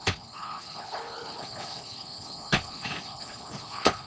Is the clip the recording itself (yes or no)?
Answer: no